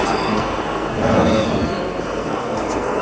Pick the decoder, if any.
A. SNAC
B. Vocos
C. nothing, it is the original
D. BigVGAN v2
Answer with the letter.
A